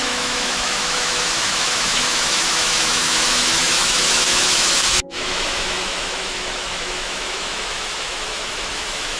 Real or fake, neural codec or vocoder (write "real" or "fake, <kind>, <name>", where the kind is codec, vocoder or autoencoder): fake, autoencoder, DAC-VAE